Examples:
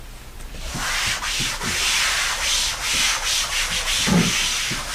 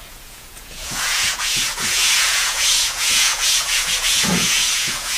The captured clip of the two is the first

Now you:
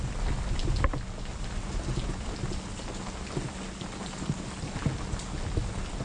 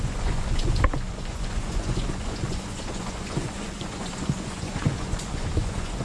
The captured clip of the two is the first